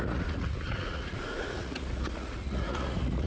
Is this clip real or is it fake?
fake